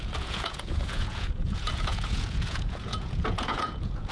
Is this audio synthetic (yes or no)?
yes